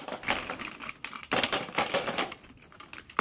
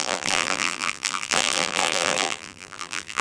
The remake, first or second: second